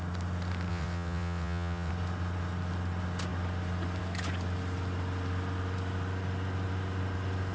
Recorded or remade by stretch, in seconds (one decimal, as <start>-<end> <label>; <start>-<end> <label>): 0.0-0.7 recorded; 0.7-1.9 remade; 1.9-7.5 recorded